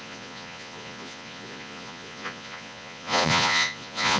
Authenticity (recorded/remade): remade